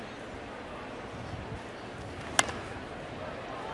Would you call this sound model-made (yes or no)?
no